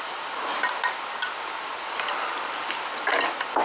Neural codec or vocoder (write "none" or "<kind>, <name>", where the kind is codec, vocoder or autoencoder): none